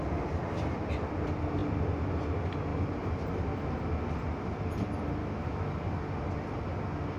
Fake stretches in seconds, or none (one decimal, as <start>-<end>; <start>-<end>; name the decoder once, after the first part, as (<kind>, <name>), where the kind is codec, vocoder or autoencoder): 5.2-5.7 (autoencoder, DAC-VAE)